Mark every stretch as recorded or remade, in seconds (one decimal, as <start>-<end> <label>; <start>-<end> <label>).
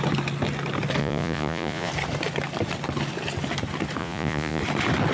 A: 0.0-1.0 recorded; 1.0-1.9 remade; 1.9-4.0 recorded; 4.0-4.6 remade; 4.6-5.1 recorded